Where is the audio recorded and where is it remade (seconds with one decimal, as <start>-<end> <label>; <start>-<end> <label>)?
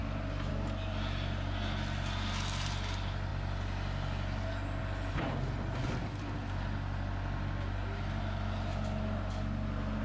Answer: 0.0-10.0 recorded